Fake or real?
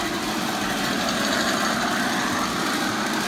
real